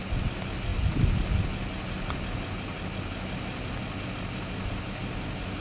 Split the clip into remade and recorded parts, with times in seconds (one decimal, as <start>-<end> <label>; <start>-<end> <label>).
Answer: 0.0-5.6 recorded